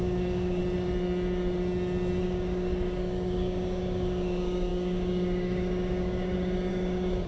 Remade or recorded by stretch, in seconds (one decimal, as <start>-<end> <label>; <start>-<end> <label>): 0.0-0.6 remade; 0.6-2.2 recorded; 2.2-7.3 remade